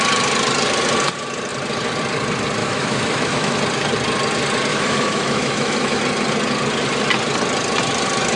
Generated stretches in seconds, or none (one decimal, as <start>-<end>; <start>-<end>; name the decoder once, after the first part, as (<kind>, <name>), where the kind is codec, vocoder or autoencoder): 2.6-3.6 (autoencoder, DAC-VAE); 4.7-6.0